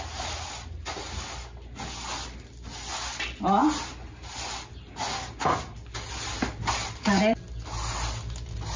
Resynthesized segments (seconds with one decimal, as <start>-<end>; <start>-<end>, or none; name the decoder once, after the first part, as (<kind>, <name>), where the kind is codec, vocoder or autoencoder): none